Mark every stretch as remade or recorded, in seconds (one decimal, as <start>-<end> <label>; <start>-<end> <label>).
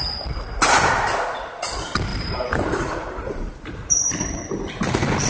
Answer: 0.0-2.1 recorded; 2.1-4.3 remade; 4.3-5.3 recorded